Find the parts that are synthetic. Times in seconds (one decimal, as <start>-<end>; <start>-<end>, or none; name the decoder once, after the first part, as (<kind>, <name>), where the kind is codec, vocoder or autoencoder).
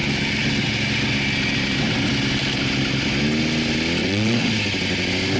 4.0-4.5 (vocoder, WaveNeXt)